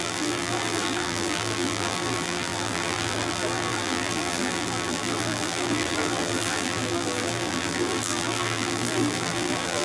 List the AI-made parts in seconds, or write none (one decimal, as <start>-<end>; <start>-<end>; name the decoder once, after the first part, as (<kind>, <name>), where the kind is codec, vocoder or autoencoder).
0.0-9.8 (vocoder, BigVGAN v2)